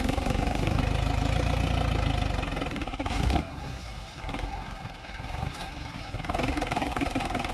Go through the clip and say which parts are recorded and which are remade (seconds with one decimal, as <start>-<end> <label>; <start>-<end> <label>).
0.0-0.8 remade; 0.8-2.7 recorded; 2.7-7.5 remade